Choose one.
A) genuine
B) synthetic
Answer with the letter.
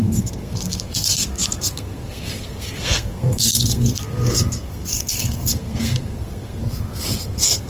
B